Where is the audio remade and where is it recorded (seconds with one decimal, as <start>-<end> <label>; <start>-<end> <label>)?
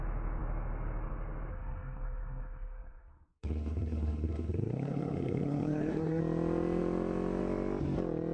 0.0-1.5 recorded; 1.5-6.2 remade; 6.2-8.3 recorded